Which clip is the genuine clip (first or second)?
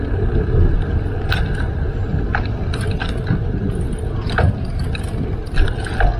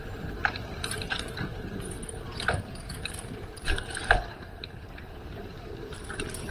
first